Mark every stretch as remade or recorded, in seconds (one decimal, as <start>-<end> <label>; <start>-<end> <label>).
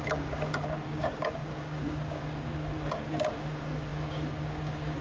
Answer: 0.0-5.0 remade